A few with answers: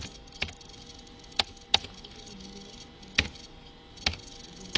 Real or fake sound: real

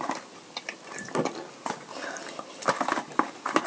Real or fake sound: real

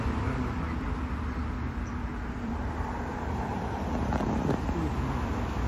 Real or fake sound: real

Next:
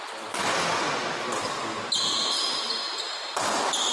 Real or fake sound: real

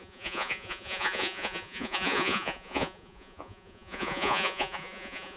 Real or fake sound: fake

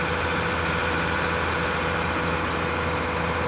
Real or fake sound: real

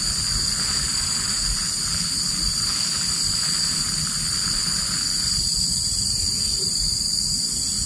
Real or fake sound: real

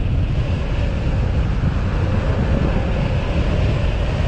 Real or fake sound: real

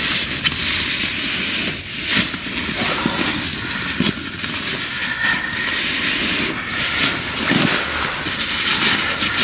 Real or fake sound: real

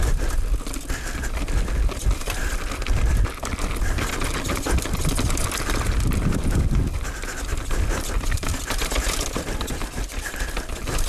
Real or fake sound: real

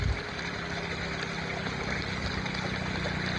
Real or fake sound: real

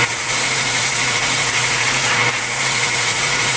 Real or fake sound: fake